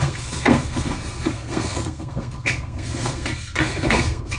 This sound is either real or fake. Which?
fake